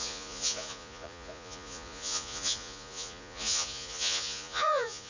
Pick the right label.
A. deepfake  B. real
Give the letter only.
A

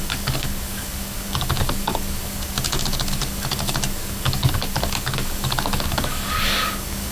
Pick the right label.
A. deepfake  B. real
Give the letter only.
A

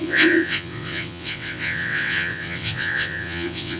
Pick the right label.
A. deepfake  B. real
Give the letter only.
A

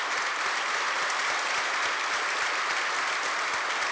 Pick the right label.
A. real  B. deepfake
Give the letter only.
A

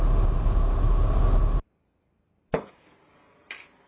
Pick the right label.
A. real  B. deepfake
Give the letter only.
A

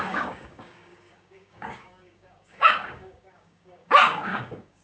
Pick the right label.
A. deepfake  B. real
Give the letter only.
A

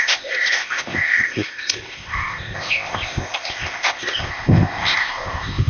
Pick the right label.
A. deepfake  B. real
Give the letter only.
A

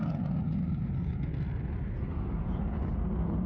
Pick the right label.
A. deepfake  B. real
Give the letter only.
B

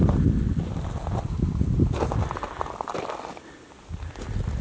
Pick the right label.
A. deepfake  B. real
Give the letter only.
B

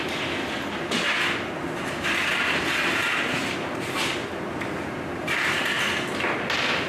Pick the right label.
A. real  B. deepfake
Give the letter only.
A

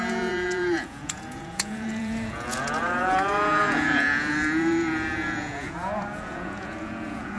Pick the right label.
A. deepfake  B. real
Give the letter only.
A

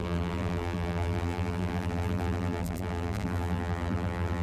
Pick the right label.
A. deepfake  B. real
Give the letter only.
A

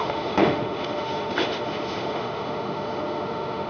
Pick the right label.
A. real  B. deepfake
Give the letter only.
B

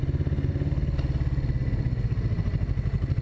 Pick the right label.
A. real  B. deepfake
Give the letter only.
A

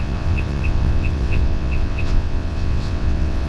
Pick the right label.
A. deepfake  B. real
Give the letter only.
A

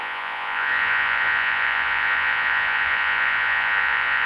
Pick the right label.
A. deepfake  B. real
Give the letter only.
A